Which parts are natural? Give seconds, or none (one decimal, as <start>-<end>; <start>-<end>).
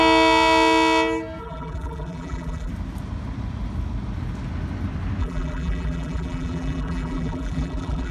0.0-1.4; 2.7-5.2